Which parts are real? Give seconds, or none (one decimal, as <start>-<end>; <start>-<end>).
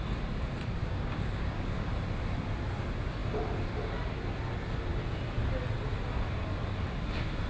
0.0-0.8; 1.9-7.5